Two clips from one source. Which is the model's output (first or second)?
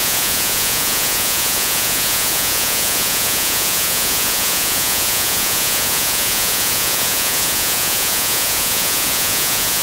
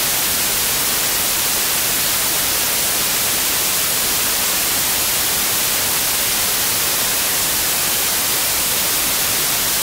first